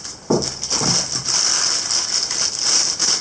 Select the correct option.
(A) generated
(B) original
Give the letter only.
B